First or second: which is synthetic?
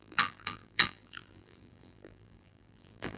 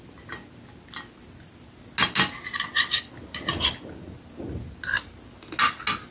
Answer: first